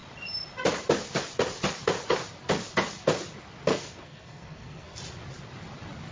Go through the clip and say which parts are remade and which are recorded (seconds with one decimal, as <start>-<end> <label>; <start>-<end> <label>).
0.0-3.7 recorded; 3.7-5.0 remade; 5.0-6.1 recorded

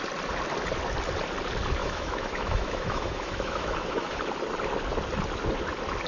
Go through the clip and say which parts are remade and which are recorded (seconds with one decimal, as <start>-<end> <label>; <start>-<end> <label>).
0.0-1.8 recorded; 1.8-4.2 remade; 4.2-6.1 recorded

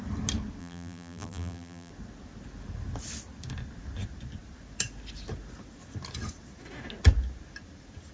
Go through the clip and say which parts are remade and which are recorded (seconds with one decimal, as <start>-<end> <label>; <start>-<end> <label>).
0.0-0.6 recorded; 0.6-1.9 remade; 1.9-8.1 recorded

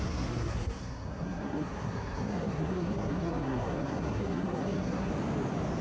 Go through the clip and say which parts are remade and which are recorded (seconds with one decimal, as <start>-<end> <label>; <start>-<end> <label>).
0.0-5.1 remade; 5.1-5.8 recorded

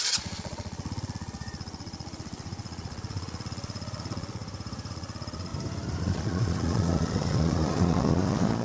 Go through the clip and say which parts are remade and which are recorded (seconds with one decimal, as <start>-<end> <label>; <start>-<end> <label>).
0.0-4.4 remade; 4.4-4.9 recorded; 4.9-5.5 remade; 5.5-6.0 recorded; 6.0-8.6 remade

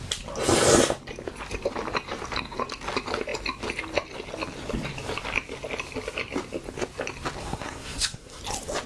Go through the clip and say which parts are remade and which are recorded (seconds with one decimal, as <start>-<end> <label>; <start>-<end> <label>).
0.0-7.4 recorded; 7.4-8.4 remade; 8.4-8.9 recorded

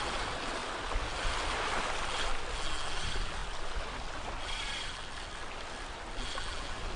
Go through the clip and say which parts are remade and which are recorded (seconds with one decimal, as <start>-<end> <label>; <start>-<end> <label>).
0.0-7.0 recorded